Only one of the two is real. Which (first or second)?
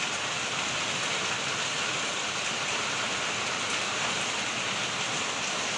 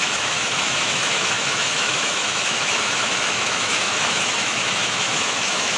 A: first